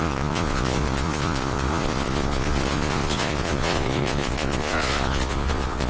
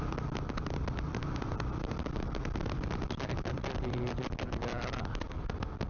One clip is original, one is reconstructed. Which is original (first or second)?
second